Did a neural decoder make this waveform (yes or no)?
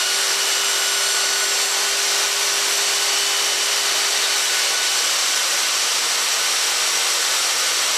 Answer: no